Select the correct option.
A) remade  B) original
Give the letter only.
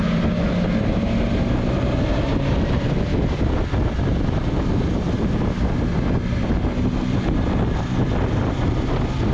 B